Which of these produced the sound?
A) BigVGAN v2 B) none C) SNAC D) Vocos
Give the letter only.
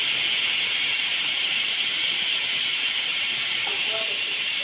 A